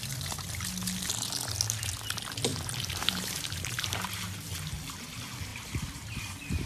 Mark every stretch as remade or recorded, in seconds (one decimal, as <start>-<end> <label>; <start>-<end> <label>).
0.0-2.5 recorded; 2.5-4.4 remade; 4.4-5.5 recorded; 5.5-6.7 remade